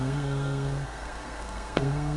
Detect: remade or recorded remade